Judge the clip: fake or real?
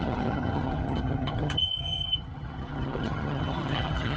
fake